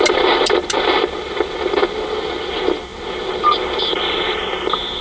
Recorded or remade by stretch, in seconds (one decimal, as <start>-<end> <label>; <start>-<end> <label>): 0.0-5.0 recorded